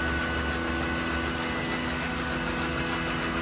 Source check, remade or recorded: recorded